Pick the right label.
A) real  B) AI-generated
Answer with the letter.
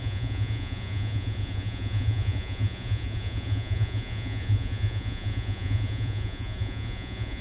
B